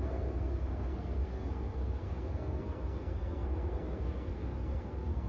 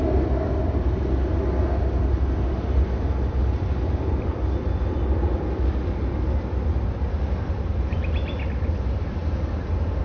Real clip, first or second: second